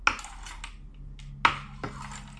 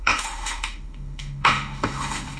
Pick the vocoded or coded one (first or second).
second